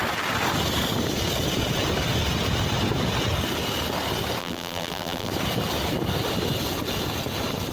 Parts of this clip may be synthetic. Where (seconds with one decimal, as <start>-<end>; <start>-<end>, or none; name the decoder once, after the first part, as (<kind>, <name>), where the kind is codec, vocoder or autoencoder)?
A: 4.4-5.3 (vocoder, BigVGAN v2)